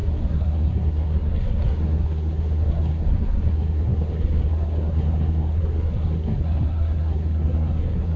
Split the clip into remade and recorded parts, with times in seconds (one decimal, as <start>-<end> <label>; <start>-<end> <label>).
0.0-8.2 remade